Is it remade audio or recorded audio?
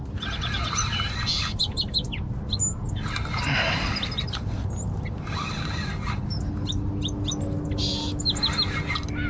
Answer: recorded